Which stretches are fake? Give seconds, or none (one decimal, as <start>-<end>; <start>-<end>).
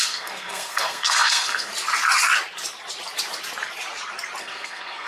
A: 0.0-1.7; 4.4-5.1